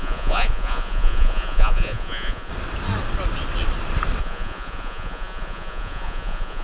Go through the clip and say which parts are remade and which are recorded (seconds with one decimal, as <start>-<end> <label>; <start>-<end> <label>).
0.0-2.5 remade; 2.5-4.2 recorded; 4.2-6.6 remade